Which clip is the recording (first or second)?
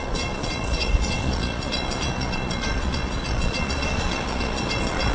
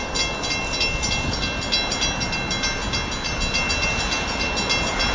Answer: second